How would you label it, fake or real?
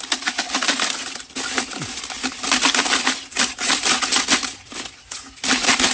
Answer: real